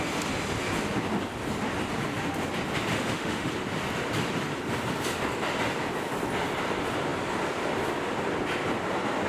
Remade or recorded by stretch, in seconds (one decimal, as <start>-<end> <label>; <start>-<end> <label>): 0.0-2.9 recorded; 2.9-3.5 remade; 3.5-9.3 recorded